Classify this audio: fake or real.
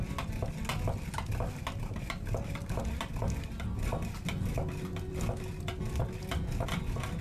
real